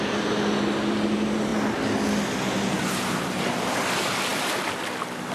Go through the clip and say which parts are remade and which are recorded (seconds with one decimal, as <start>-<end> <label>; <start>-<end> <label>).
0.0-5.3 recorded